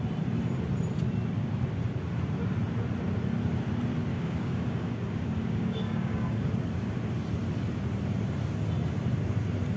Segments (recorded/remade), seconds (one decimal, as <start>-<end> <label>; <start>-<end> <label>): 0.0-4.1 recorded; 4.1-6.5 remade; 6.5-9.8 recorded